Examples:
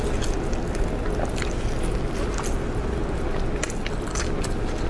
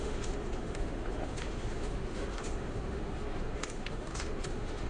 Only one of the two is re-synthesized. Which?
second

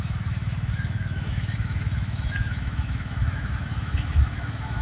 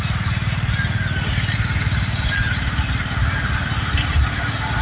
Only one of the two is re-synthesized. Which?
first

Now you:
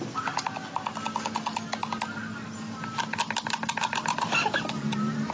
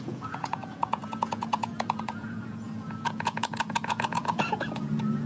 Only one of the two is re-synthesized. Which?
second